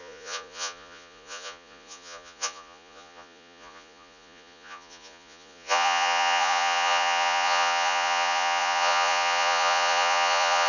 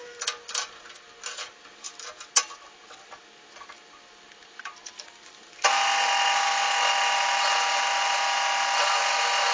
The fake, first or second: first